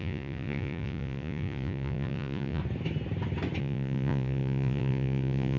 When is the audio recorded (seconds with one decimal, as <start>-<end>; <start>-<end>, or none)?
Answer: 2.6-3.6